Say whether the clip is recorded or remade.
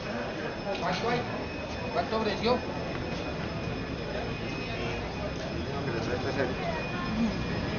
recorded